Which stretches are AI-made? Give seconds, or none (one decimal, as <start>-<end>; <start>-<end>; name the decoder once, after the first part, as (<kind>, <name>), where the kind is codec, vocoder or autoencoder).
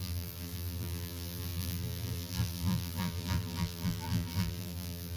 0.0-5.2 (vocoder, BigVGAN v2)